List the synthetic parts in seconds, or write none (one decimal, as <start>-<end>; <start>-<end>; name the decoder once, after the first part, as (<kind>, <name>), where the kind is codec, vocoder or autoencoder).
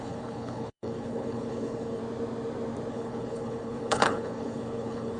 0.0-2.0 (codec, HILCodec); 2.9-5.2